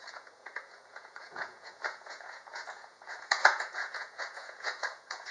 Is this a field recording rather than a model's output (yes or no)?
no